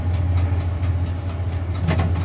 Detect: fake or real real